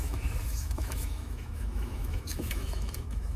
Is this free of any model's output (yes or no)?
no